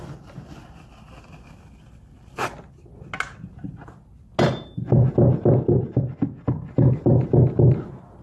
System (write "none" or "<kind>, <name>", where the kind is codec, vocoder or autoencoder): none